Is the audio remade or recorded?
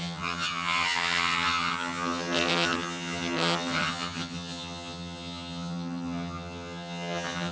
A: remade